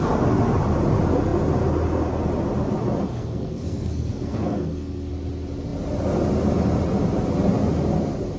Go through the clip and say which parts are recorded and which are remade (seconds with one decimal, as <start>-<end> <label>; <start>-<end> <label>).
0.0-3.1 recorded; 3.1-5.1 remade; 5.1-8.4 recorded